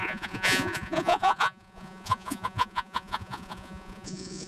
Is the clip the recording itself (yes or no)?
no